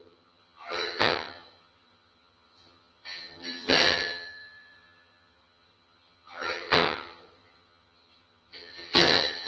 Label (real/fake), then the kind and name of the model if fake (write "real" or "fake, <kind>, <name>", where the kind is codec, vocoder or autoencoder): fake, vocoder, HiFi-GAN